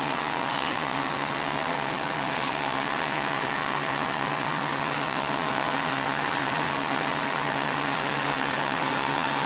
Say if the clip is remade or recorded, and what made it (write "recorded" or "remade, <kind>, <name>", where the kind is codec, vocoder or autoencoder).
remade, vocoder, WaveNeXt